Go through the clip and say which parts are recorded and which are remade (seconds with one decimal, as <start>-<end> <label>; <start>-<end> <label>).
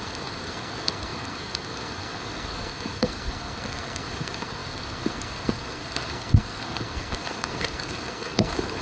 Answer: 0.0-8.8 remade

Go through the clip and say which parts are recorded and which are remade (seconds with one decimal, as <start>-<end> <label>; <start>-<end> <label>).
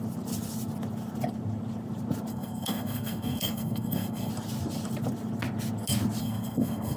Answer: 0.0-2.3 recorded; 2.3-4.3 remade; 4.3-6.2 recorded; 6.2-7.0 remade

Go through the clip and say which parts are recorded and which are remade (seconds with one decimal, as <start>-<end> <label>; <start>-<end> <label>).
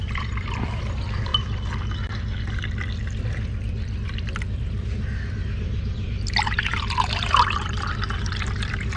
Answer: 0.0-1.3 remade; 1.3-4.3 recorded; 4.3-9.0 remade